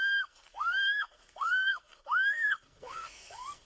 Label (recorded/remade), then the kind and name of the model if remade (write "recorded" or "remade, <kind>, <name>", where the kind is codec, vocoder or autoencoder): remade, codec, SNAC